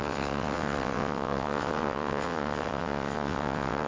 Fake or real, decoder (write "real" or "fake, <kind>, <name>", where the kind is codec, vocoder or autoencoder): fake, vocoder, WaveNeXt